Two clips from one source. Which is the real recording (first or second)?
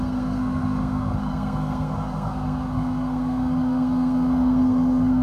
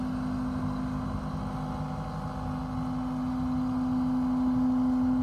second